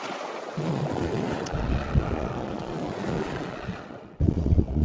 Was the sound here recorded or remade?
remade